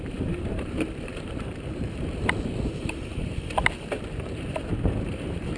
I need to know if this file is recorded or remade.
remade